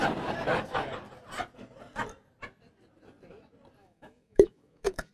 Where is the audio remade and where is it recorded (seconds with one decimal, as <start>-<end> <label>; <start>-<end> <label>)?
0.0-3.8 recorded; 3.8-5.1 remade